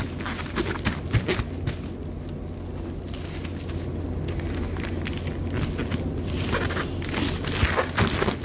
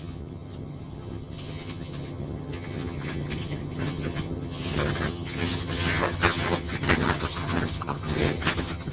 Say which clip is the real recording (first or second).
first